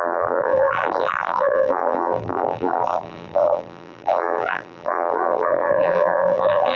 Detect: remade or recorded remade